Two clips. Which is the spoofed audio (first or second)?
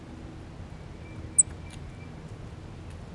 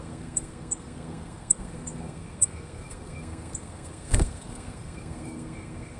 second